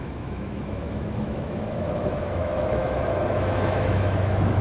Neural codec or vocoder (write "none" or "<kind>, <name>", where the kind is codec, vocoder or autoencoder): autoencoder, DAC-VAE